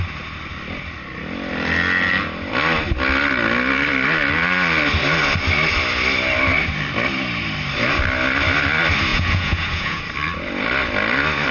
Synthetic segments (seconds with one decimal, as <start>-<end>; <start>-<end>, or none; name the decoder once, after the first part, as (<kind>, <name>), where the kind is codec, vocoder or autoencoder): 9.1-10.0 (vocoder, Vocos)